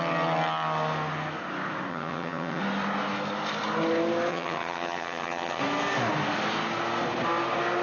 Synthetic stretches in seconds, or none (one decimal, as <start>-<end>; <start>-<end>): 1.9-2.6; 4.3-5.6